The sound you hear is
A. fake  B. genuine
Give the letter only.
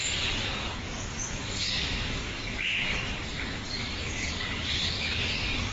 A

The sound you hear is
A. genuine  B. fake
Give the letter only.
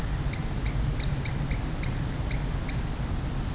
A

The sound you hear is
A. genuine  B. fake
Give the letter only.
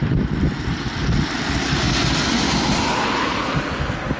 A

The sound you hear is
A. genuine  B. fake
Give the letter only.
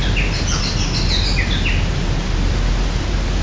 A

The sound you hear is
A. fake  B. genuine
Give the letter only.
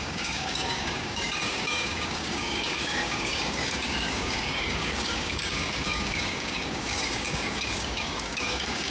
A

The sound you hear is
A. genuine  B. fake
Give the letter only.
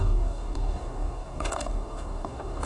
B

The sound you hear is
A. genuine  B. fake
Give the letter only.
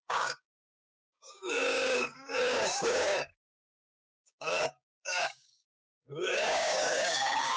B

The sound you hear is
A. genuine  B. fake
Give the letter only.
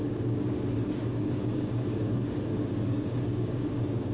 B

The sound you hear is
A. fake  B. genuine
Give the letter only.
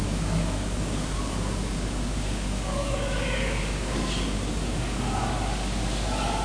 A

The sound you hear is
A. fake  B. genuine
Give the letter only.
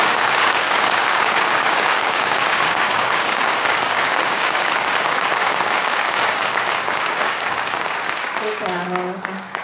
A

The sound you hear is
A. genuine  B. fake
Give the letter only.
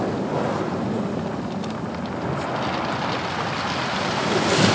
A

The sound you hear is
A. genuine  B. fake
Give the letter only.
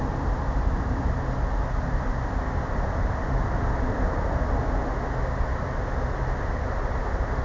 A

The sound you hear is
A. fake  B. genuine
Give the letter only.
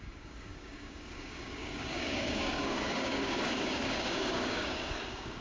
A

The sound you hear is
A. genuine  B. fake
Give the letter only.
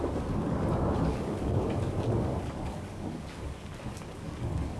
B